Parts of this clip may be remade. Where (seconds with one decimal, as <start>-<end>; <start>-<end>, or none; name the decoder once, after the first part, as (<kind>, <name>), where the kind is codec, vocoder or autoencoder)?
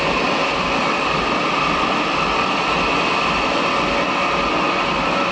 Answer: 0.5-3.7 (vocoder, BigVGAN v2)